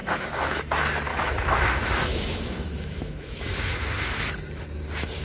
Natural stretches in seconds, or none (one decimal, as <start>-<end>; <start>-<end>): 0.6-1.1; 4.2-5.2